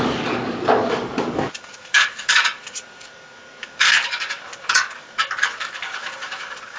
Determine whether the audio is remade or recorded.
remade